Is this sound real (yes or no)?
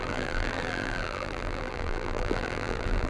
no